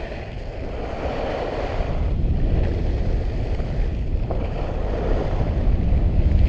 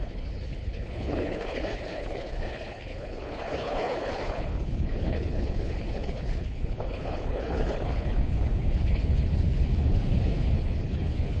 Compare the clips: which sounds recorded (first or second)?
first